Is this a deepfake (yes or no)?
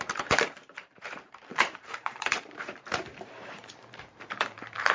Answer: yes